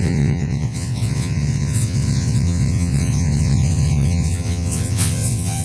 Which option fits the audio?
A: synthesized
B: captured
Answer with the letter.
A